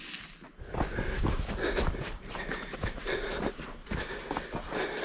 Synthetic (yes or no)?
no